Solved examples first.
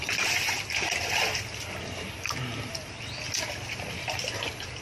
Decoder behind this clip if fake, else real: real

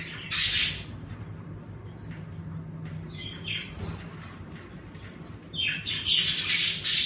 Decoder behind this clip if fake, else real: real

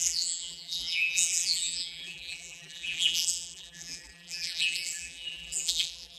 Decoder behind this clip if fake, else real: fake, vocoder, BigVGAN v2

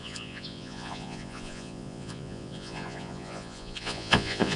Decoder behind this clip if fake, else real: fake, vocoder, Vocos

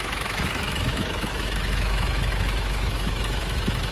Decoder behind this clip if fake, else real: fake, autoencoder, DAC-VAE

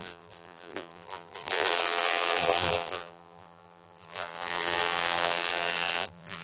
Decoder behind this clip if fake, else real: fake, vocoder, BigVGAN v2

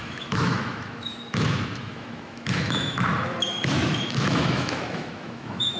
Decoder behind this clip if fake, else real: fake, autoencoder, DAC-VAE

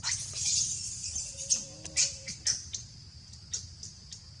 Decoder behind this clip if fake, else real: real